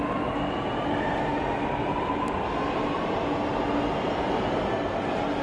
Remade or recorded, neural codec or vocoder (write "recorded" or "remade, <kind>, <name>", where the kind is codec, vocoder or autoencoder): recorded